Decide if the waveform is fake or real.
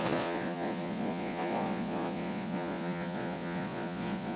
fake